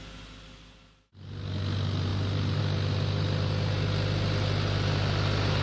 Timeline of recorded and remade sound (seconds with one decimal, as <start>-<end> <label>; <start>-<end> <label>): 0.0-5.6 recorded